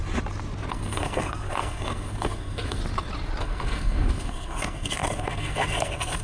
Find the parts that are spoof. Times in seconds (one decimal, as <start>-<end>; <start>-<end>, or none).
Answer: 0.7-2.8; 3.4-6.2